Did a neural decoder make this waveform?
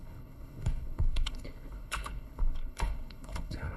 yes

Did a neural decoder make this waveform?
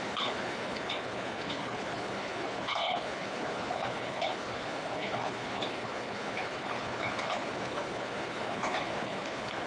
yes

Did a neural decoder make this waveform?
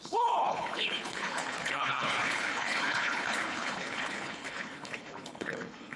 yes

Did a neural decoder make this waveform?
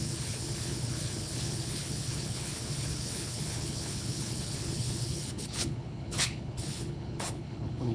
yes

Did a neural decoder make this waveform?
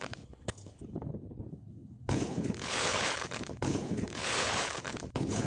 yes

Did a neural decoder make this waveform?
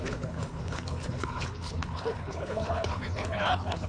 yes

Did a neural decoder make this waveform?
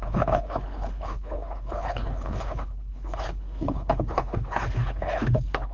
yes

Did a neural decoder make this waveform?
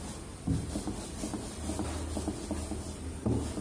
no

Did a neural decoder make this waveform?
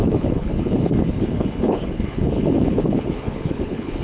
yes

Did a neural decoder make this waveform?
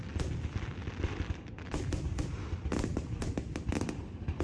no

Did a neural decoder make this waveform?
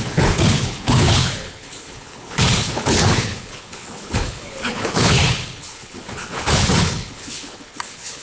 yes